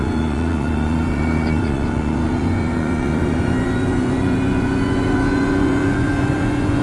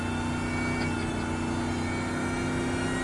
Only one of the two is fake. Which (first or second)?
first